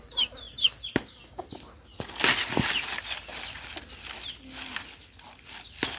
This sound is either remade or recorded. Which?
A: recorded